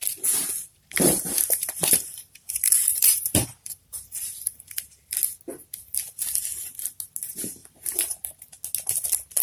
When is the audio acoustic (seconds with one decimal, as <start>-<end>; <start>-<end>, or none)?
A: 0.0-0.7; 5.2-7.6; 8.4-9.4